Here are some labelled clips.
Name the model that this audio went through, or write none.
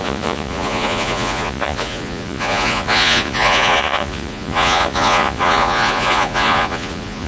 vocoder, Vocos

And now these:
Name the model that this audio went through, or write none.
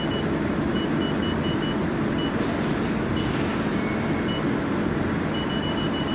none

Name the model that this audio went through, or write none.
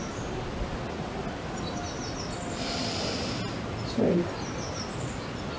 none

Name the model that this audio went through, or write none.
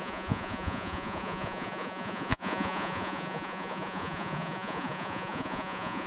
vocoder, Vocos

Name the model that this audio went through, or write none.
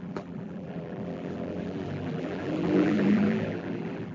vocoder, BigVGAN v2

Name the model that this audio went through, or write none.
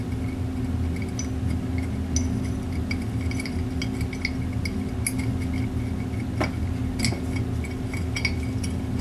none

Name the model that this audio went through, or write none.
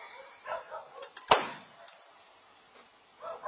none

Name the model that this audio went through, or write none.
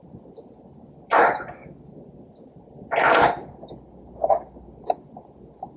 none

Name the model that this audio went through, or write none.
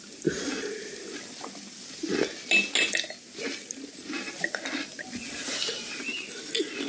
none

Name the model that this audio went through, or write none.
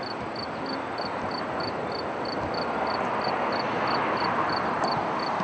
none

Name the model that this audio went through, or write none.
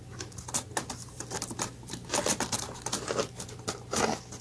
none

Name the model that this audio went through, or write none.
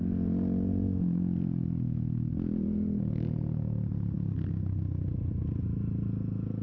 none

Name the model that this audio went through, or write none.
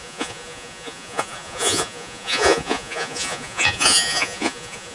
vocoder, Vocos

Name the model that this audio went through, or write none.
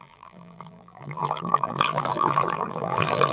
vocoder, BigVGAN v2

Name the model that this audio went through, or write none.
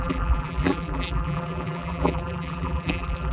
vocoder, BigVGAN v2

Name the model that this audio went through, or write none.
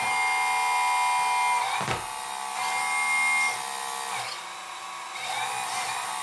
none